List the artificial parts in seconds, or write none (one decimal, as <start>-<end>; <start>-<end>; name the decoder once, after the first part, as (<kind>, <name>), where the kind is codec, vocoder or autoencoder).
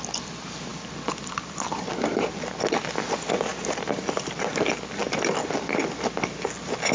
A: 0.7-1.9 (vocoder, BigVGAN v2); 3.5-4.5; 5.0-5.8